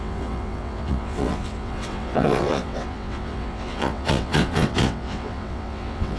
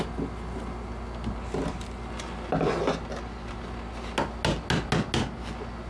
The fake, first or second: first